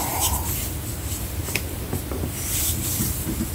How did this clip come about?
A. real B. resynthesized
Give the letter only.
B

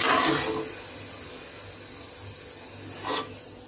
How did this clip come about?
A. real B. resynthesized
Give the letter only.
A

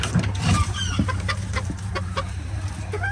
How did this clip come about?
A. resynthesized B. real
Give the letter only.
A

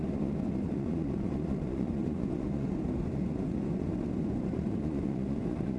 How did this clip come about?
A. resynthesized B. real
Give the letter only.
A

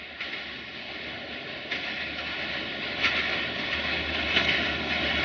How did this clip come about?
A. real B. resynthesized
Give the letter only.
A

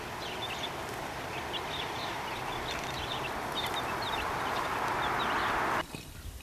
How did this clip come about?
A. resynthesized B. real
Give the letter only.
B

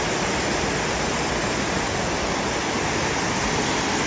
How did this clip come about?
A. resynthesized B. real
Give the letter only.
B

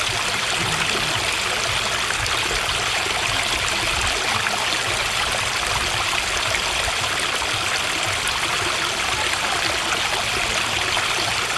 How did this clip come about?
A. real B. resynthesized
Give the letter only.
A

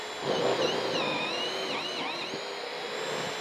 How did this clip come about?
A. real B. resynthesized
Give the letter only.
A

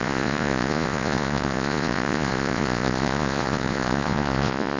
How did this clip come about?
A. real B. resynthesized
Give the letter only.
B